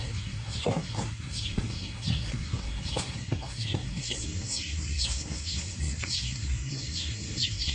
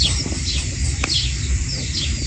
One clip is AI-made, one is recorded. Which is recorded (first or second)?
second